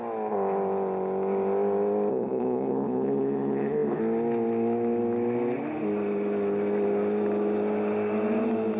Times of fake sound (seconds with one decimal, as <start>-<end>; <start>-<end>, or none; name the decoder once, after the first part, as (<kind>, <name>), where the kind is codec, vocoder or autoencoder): 2.1-4.0 (codec, ZipCodec)